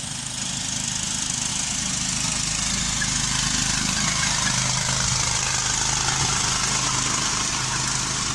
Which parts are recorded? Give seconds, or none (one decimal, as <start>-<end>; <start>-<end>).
0.0-8.3